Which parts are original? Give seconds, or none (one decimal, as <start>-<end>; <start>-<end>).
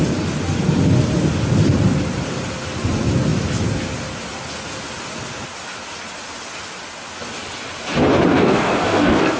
0.0-8.3